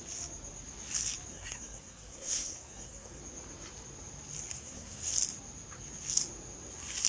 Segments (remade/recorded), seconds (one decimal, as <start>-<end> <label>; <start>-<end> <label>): 0.0-1.3 recorded; 1.3-3.2 remade; 3.2-4.5 recorded; 4.5-5.1 remade; 5.1-7.1 recorded